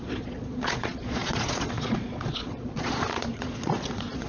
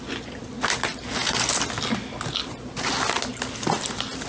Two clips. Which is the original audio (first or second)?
second